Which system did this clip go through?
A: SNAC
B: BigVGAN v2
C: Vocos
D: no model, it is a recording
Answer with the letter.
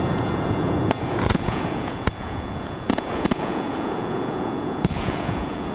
C